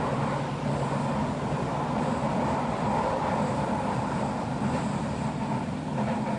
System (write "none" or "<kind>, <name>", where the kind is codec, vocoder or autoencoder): vocoder, BigVGAN v2